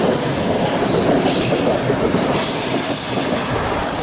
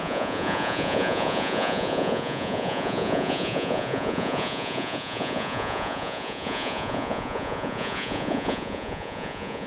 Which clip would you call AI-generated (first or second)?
second